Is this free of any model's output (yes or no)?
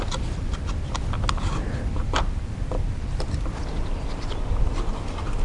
yes